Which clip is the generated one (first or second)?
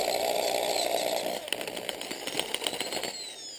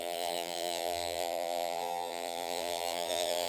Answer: second